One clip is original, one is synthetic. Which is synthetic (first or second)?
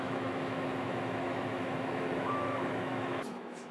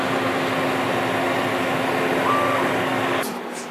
first